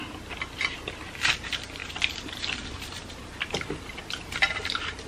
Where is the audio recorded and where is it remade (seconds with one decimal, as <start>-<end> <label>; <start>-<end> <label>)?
0.0-1.0 recorded; 1.0-5.1 remade